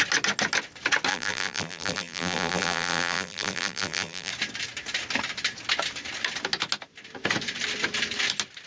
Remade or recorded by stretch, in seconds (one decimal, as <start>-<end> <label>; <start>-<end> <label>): 0.0-1.1 recorded; 1.1-4.3 remade; 4.3-8.7 recorded

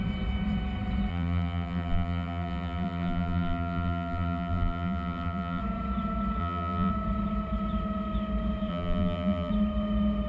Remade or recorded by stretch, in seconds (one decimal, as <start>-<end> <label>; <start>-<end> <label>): 0.0-1.1 recorded; 1.1-5.6 remade; 5.6-6.4 recorded; 6.4-6.9 remade; 6.9-8.7 recorded; 8.7-9.5 remade; 9.5-10.3 recorded

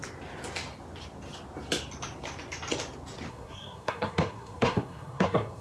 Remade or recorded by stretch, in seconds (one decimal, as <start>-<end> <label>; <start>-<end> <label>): 0.0-3.3 recorded; 3.3-5.6 remade

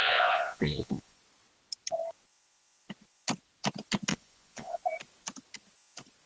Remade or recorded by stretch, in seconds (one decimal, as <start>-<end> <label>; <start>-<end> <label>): 0.0-1.2 remade; 1.2-4.1 recorded; 4.1-4.8 remade; 4.8-6.3 recorded

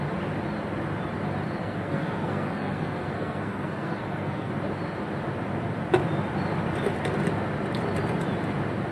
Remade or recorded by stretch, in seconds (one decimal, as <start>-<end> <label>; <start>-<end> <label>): 0.0-1.6 recorded; 1.6-4.5 remade; 4.5-8.9 recorded

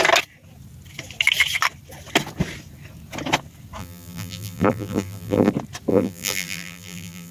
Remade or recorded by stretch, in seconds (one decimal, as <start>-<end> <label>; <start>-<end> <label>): 0.0-3.8 recorded; 3.8-5.5 remade; 5.5-5.9 recorded; 5.9-7.3 remade

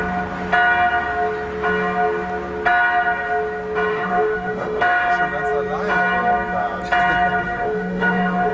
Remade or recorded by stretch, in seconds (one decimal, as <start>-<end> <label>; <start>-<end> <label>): 0.0-3.9 recorded; 3.9-5.1 remade; 5.1-7.4 recorded; 7.4-8.5 remade